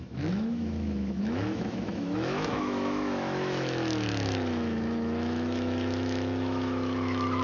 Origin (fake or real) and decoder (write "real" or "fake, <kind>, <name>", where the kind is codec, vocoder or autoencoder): fake, autoencoder, DAC-VAE